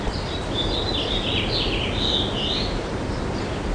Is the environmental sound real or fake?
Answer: real